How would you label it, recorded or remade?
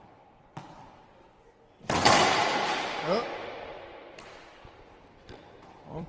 remade